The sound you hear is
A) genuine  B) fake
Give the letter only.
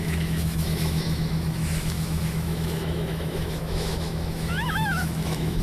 B